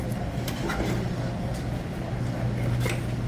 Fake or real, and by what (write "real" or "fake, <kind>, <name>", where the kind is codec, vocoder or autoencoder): real